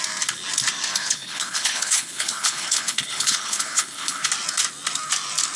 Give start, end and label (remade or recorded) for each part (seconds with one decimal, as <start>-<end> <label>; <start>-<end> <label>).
0.0-0.9 recorded; 0.9-4.3 remade; 4.3-5.6 recorded